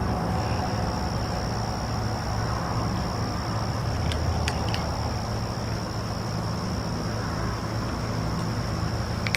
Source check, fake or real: real